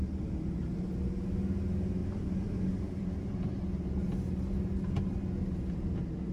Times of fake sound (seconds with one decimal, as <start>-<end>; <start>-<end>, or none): none